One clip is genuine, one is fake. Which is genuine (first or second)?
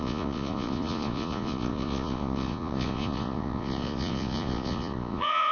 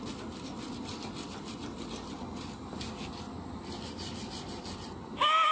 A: second